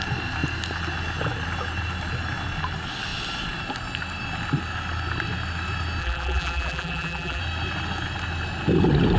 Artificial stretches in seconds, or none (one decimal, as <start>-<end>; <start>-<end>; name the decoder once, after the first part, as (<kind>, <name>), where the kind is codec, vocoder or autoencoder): 6.0-7.4 (vocoder, BigVGAN v2)